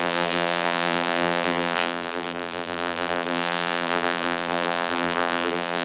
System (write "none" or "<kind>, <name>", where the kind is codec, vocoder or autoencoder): vocoder, BigVGAN v2